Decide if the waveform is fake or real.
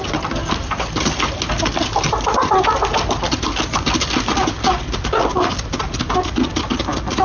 real